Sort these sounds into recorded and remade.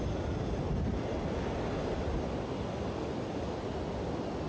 recorded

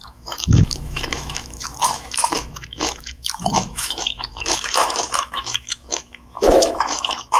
remade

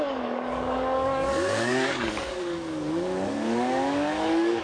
remade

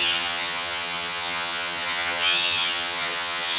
remade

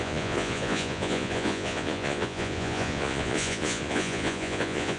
remade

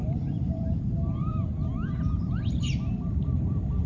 remade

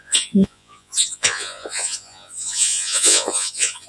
remade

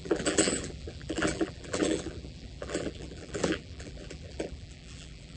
remade